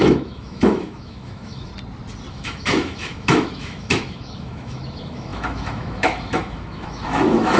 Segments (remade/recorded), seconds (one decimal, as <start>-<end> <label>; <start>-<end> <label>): 0.0-1.7 remade; 1.7-2.3 recorded; 2.3-7.6 remade